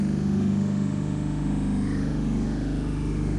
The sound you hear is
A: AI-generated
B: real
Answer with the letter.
A